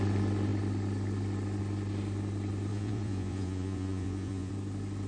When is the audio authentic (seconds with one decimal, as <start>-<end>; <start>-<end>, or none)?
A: 0.0-2.7; 4.5-5.1